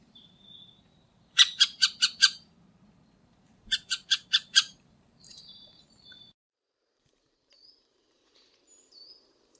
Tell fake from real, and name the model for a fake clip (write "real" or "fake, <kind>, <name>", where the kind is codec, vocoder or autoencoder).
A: fake, vocoder, BigVGAN v2